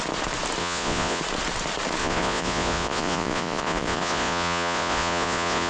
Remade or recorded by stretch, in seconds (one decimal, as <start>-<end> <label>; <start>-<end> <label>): 0.0-0.6 recorded; 0.6-1.2 remade; 1.2-2.0 recorded; 2.0-5.7 remade